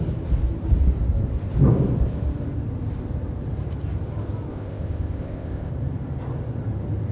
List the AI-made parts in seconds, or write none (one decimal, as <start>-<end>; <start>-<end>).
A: 4.5-5.7